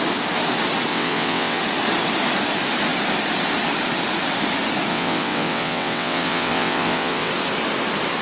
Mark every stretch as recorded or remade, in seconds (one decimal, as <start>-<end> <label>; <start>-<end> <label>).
0.0-0.9 recorded; 0.9-1.6 remade; 1.6-4.9 recorded; 4.9-7.3 remade; 7.3-8.2 recorded